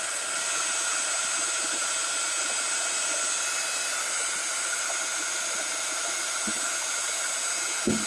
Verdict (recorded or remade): recorded